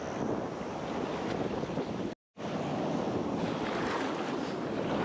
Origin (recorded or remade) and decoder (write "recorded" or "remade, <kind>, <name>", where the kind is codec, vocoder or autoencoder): recorded